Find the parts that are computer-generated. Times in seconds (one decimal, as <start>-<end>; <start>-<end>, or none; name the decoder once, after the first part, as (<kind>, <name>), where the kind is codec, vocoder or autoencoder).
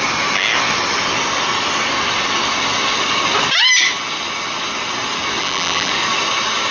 5.4-5.9 (vocoder, BigVGAN v2)